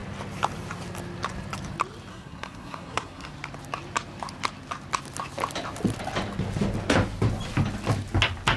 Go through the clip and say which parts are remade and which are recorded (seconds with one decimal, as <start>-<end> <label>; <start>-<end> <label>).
0.0-2.1 recorded; 2.1-3.3 remade; 3.3-8.6 recorded